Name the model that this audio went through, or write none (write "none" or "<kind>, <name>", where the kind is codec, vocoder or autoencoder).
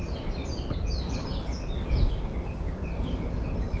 none